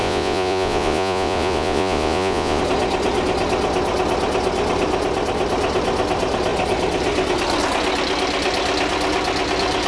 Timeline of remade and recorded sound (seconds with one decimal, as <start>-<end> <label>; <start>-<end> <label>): 0.0-2.6 remade; 2.6-9.9 recorded